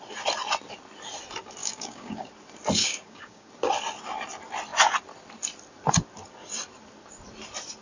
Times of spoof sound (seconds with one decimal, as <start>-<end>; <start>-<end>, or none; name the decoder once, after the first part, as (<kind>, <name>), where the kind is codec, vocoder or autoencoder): 1.6-2.3 (codec, DAC); 2.8-3.5